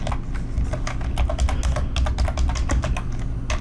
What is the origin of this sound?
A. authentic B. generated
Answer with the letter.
A